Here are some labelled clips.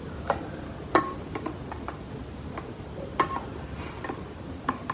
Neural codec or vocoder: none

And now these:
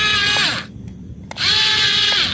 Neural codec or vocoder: none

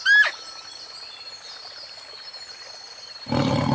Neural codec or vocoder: none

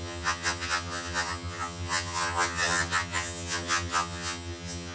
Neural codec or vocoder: vocoder, HiFi-GAN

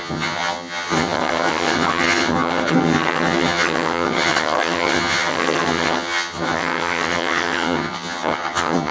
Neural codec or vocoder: vocoder, HiFi-GAN